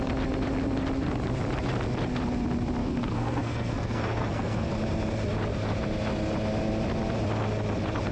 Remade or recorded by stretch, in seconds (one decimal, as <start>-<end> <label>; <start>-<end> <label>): 0.0-2.8 recorded; 2.8-4.7 remade; 4.7-8.1 recorded